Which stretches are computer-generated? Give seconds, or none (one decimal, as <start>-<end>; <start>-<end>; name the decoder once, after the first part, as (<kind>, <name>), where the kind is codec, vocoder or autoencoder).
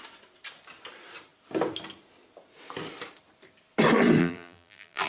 4.2-5.1 (vocoder, BigVGAN v2)